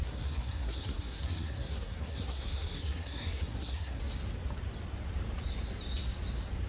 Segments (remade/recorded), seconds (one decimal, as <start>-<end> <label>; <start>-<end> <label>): 0.0-4.0 remade; 4.0-6.7 recorded